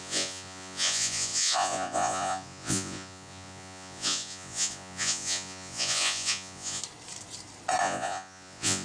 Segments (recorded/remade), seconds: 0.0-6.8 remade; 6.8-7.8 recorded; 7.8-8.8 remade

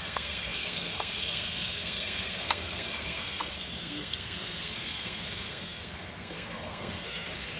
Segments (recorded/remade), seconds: 0.0-7.6 remade